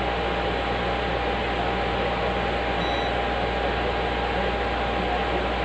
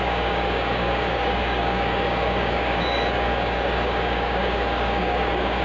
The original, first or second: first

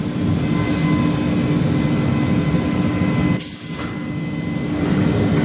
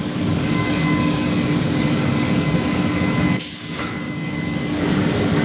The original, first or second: first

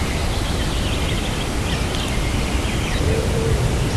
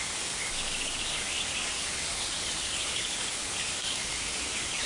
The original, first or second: first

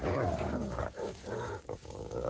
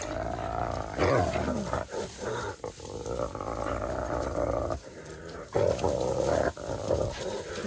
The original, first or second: second